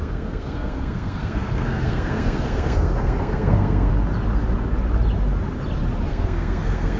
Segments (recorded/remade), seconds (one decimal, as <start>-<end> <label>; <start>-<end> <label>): 0.0-3.9 remade; 3.9-6.1 recorded; 6.1-7.0 remade